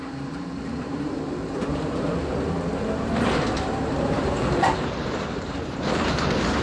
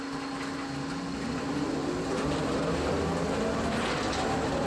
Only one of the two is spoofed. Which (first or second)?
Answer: first